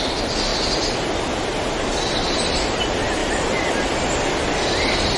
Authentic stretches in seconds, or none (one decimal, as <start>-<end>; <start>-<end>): 0.0-2.2; 2.8-5.2